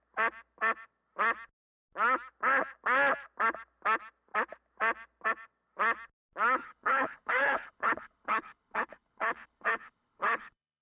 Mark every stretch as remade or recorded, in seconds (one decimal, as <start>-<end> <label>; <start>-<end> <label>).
0.0-6.6 recorded; 6.6-10.8 remade